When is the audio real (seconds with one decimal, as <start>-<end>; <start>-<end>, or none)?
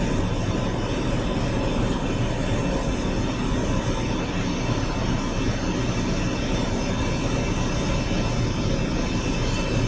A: 0.0-9.9